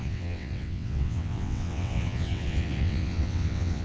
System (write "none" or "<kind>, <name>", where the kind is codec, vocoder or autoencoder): vocoder, WaveNeXt